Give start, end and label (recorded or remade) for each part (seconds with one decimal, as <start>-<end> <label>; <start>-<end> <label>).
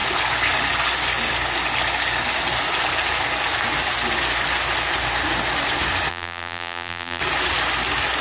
0.0-6.1 recorded; 6.1-7.2 remade; 7.2-8.2 recorded